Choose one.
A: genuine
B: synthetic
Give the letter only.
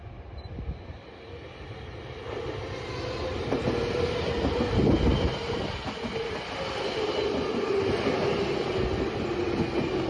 A